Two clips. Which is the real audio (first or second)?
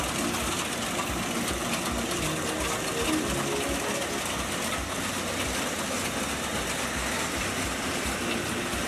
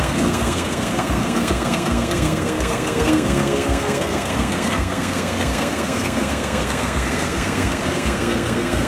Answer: first